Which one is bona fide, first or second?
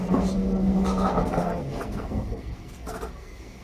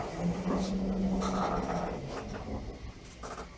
second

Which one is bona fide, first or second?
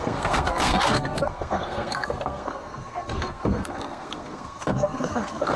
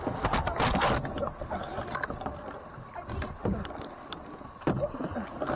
second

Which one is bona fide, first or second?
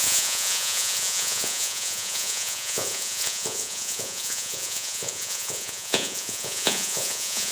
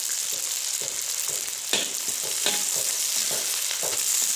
second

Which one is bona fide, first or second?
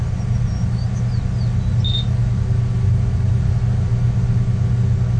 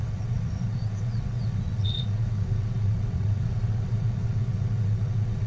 first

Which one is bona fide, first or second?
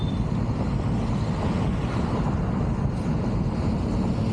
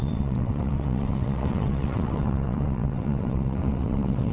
first